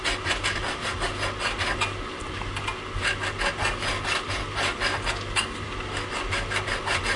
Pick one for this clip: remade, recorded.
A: recorded